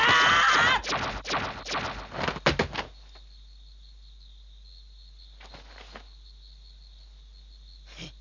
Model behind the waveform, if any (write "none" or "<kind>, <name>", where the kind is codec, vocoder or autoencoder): none